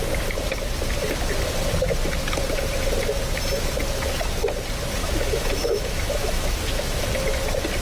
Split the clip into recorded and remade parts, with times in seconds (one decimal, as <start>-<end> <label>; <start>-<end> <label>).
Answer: 0.0-5.0 recorded; 5.0-7.0 remade; 7.0-7.8 recorded